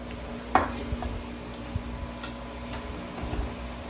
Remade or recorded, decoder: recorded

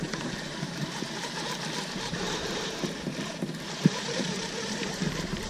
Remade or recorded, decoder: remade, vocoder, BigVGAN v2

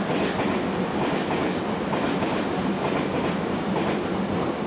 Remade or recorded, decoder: recorded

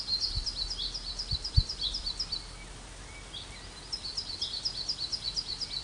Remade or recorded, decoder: recorded